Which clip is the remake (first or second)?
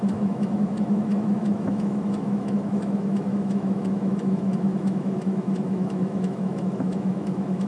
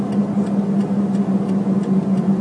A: first